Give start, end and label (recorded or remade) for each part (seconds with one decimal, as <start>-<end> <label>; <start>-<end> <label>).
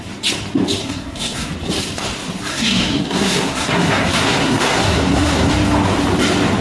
0.0-0.8 recorded; 0.8-1.5 remade; 1.5-2.5 recorded; 2.5-5.5 remade; 5.5-6.6 recorded